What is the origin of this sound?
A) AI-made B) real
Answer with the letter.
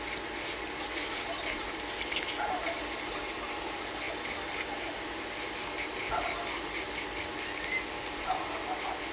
B